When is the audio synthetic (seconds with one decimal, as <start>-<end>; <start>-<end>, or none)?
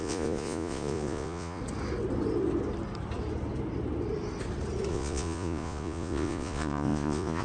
0.0-1.6; 4.9-7.4